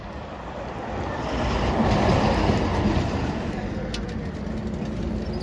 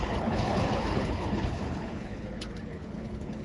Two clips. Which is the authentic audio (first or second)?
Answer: first